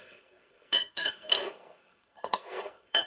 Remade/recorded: remade